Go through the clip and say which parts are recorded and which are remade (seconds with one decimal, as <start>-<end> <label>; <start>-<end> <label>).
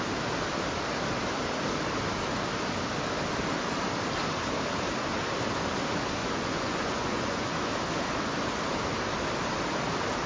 0.0-6.2 recorded; 6.2-7.7 remade; 7.7-10.3 recorded